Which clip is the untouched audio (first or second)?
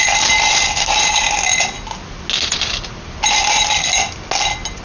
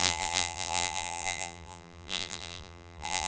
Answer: first